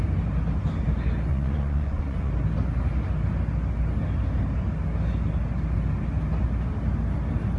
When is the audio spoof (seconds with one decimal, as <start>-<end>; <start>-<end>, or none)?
1.3-2.3